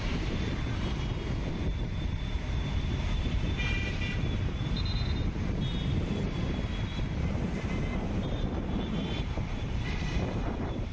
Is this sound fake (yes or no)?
yes